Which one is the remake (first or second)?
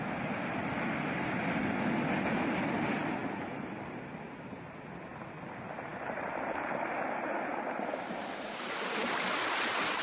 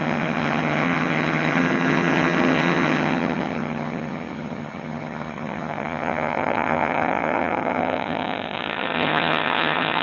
second